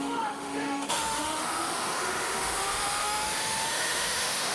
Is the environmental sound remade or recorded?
remade